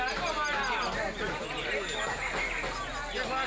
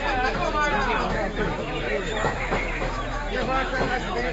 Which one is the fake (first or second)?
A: second